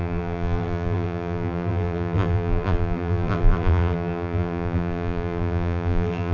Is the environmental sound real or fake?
fake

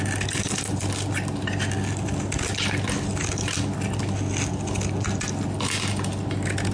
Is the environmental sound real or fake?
real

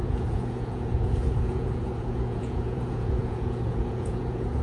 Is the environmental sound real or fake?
fake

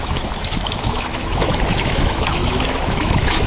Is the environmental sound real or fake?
fake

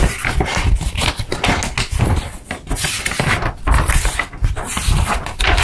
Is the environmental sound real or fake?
real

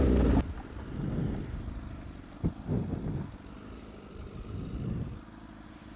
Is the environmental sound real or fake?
real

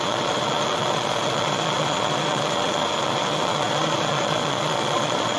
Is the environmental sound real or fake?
fake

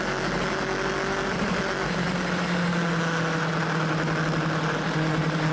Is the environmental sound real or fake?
real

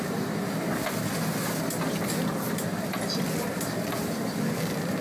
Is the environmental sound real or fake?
real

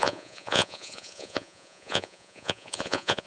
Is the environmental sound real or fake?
fake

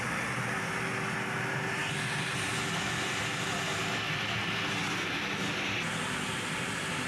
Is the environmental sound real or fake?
real